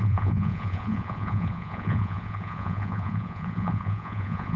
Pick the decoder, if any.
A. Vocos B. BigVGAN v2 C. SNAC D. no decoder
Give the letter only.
A